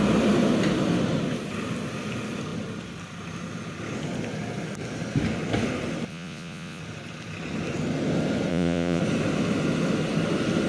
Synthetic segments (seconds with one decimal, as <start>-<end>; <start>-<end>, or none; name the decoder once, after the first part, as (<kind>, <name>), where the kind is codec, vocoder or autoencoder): 6.1-6.8 (vocoder, Vocos); 8.5-9.0